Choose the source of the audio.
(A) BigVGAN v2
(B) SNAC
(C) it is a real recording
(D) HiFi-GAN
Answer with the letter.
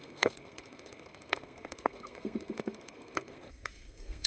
B